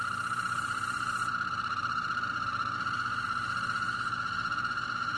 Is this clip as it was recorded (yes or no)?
yes